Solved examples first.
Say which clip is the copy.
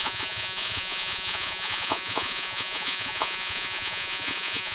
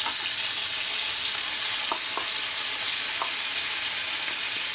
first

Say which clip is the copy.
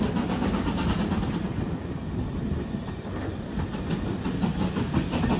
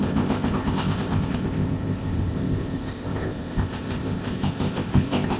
second